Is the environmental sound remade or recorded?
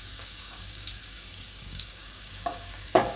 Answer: remade